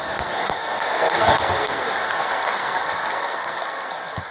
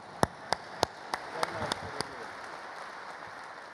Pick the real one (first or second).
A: second